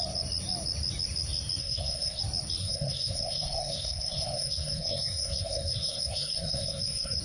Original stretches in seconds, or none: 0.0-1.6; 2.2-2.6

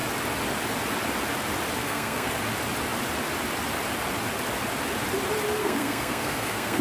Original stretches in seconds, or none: 0.0-1.8; 2.3-5.6

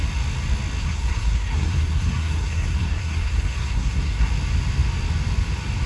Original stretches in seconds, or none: 0.0-0.8; 4.3-5.9